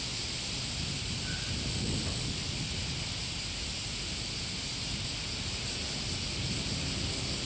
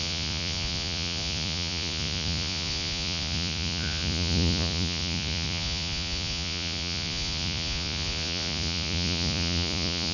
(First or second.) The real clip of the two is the first